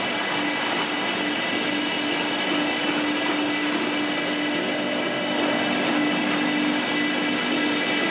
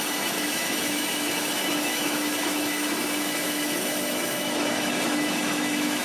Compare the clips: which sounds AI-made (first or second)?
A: second